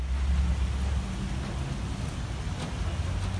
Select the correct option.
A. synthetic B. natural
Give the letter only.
B